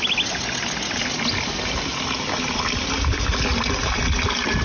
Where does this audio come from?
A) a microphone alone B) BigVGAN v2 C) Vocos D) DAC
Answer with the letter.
A